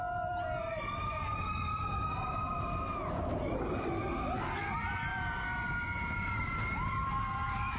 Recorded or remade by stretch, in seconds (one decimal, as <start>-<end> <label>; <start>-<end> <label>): 0.0-7.8 recorded